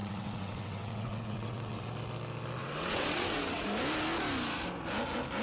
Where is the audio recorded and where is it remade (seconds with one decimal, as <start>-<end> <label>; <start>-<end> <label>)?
0.0-1.9 remade; 1.9-2.6 recorded; 2.6-3.6 remade; 3.6-5.4 recorded